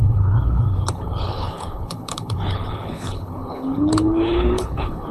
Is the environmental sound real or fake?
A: fake